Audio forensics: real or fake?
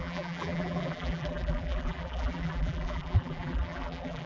fake